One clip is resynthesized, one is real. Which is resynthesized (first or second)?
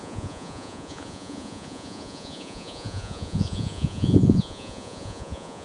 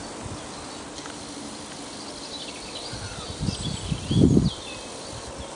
first